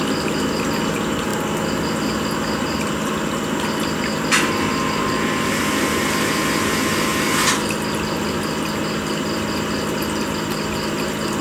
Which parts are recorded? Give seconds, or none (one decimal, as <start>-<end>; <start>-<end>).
0.0-11.4